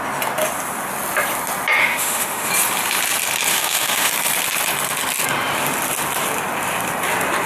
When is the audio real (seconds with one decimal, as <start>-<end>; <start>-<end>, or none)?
0.0-1.8; 2.5-3.5; 4.1-7.5